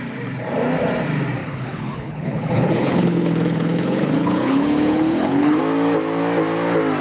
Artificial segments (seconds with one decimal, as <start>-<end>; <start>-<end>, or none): 1.4-5.6

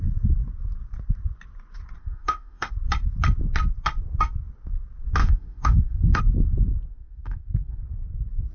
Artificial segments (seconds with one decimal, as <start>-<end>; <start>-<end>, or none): 2.0-2.7; 5.2-6.2; 6.9-7.8

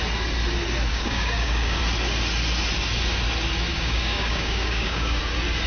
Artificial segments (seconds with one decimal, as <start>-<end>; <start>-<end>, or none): 0.9-1.8; 3.7-5.2

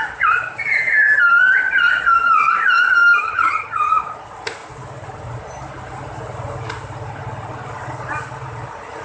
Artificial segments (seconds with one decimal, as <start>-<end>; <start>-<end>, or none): 3.2-3.9

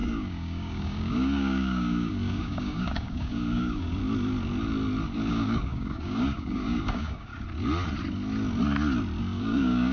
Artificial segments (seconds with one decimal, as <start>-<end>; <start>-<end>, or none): 0.0-4.0; 5.3-7.3; 9.2-9.9